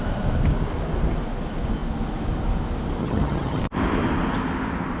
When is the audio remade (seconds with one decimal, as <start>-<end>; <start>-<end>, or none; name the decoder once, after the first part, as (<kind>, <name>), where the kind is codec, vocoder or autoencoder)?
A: 3.0-3.6 (vocoder, HiFi-GAN)